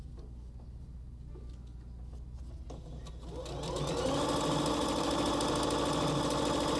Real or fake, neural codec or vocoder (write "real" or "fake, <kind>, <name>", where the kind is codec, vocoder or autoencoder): real